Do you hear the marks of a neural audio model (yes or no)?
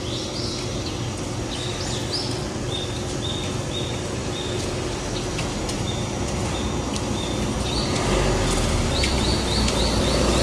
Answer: no